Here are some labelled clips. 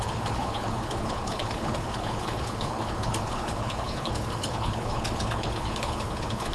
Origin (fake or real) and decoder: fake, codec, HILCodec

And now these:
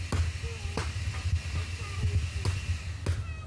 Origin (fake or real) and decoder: real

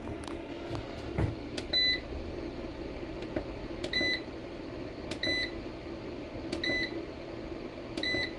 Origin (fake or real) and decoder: real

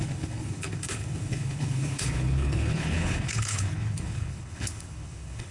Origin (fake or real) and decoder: fake, codec, HILCodec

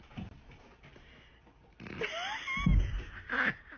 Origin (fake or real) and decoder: real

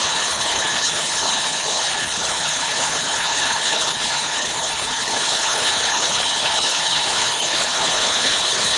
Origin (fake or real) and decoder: fake, codec, HILCodec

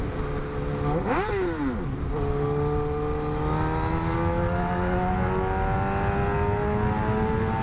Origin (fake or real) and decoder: real